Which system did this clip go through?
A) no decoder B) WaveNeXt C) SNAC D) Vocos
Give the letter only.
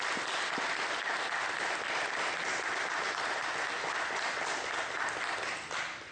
A